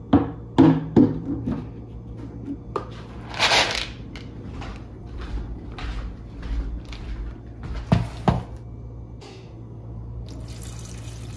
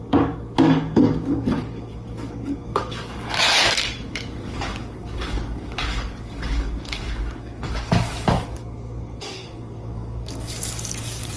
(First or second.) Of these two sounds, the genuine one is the first